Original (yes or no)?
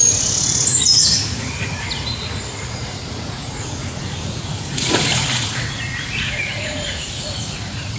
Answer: no